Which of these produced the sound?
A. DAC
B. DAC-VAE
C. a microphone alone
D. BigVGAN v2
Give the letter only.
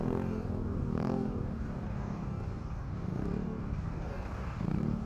A